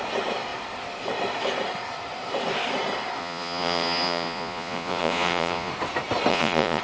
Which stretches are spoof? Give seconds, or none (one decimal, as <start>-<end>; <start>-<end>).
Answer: 3.2-5.7; 6.3-6.8